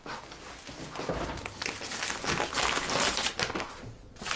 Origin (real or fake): real